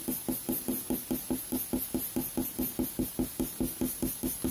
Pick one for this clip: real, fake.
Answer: real